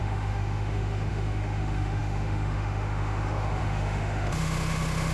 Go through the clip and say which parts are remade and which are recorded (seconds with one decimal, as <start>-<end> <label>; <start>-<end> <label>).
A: 0.0-5.1 remade